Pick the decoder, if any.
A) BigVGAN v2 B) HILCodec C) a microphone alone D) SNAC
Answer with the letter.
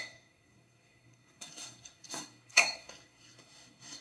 D